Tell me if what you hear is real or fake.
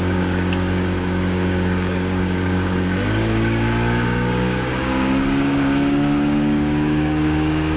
fake